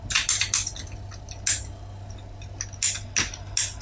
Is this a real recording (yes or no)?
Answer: yes